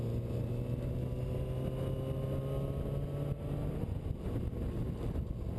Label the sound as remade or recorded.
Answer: recorded